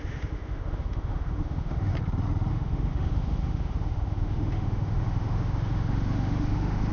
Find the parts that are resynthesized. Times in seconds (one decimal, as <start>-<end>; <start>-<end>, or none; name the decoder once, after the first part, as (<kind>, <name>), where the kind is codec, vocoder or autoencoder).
0.0-1.9 (autoencoder, DAC-VAE); 2.5-6.9